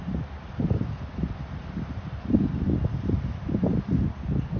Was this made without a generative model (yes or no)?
yes